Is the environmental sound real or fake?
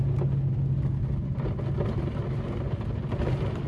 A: real